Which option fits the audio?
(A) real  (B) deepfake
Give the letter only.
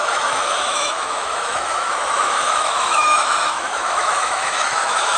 B